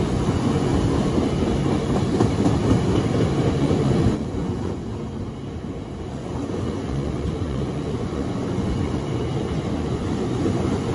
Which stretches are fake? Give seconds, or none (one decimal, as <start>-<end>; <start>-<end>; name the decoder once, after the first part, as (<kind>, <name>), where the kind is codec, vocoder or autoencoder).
0.0-0.7 (vocoder, Vocos); 3.6-4.8; 6.1-10.9